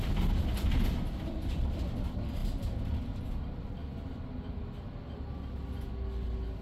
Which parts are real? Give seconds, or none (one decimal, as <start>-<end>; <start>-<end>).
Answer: 0.0-6.6